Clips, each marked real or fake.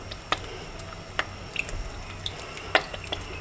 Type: real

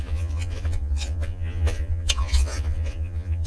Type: fake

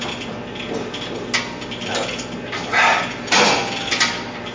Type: real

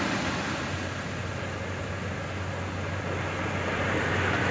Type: real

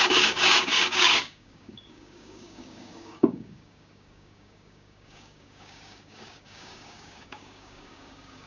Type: fake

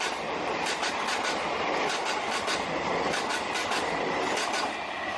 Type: real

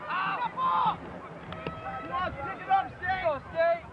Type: real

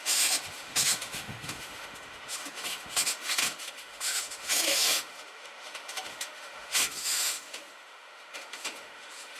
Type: fake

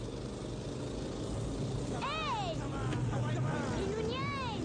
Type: real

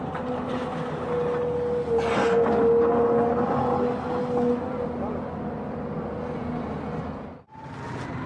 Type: real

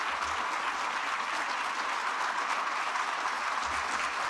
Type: real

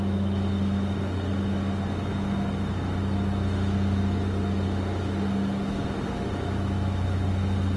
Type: real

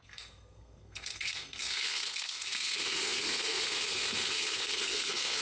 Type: fake